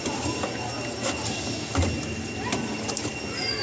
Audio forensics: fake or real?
real